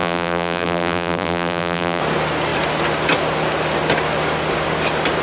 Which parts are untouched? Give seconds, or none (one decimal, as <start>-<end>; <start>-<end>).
2.0-5.2